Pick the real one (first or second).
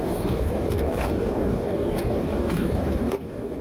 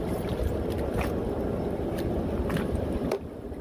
second